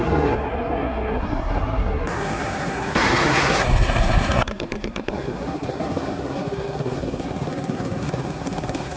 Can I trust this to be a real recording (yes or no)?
no